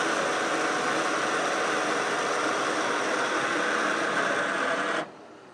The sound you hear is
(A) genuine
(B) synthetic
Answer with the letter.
A